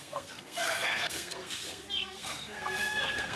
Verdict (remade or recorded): remade